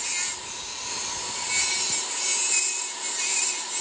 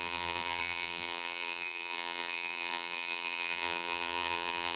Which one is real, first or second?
first